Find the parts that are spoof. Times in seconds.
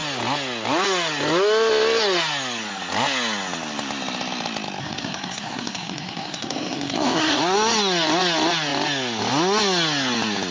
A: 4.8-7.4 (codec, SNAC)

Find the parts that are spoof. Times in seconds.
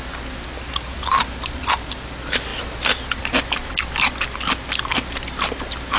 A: none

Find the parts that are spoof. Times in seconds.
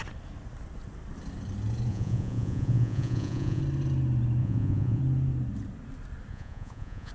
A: 1.9-3.6 (vocoder, Vocos); 4.4-5.0; 6.3-7.1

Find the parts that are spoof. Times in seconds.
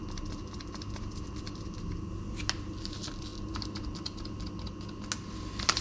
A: none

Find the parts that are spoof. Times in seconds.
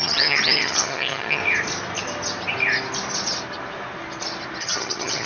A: 0.0-1.4 (vocoder, HiFi-GAN); 4.6-5.3